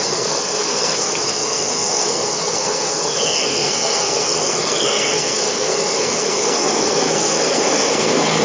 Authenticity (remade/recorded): remade